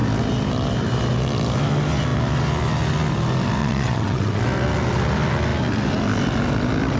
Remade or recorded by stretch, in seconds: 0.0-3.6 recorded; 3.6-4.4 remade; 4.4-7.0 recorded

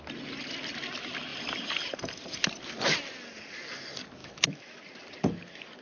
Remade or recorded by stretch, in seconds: 0.0-4.2 recorded; 4.2-4.8 remade; 4.8-5.8 recorded

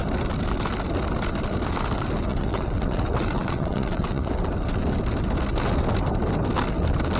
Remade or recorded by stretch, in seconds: 0.0-2.3 recorded; 2.3-4.3 remade; 4.3-7.2 recorded